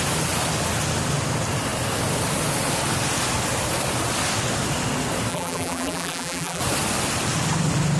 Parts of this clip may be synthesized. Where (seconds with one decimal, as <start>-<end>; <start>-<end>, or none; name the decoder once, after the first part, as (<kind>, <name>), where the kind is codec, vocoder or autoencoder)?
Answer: 5.3-6.6 (vocoder, BigVGAN v2)